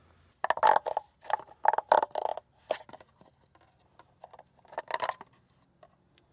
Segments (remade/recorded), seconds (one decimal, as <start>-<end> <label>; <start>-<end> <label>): 0.0-6.3 recorded